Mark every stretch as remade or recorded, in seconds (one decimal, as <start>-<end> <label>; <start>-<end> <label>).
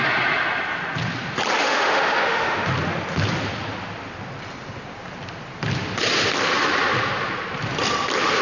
0.0-1.6 recorded; 1.6-2.7 remade; 2.7-8.4 recorded